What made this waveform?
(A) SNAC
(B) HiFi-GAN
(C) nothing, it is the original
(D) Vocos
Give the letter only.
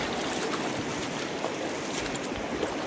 C